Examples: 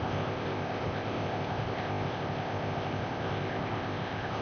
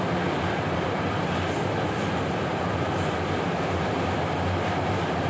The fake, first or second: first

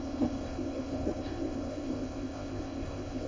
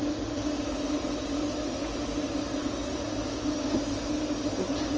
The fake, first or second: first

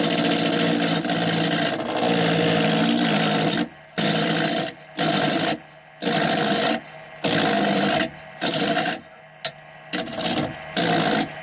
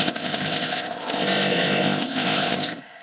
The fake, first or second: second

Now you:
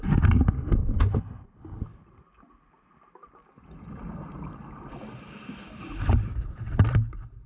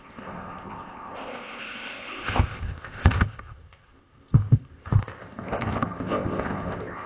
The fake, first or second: second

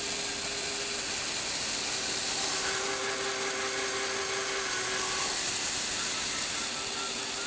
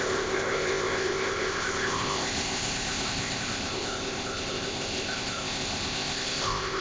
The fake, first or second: second